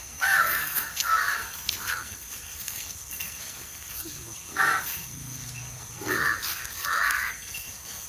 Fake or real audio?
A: fake